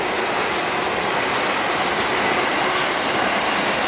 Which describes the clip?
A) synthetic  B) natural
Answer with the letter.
B